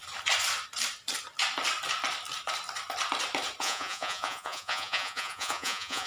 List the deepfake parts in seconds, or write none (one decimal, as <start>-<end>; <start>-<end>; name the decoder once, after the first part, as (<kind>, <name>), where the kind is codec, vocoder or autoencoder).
3.6-6.1 (vocoder, Vocos)